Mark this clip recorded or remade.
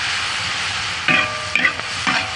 recorded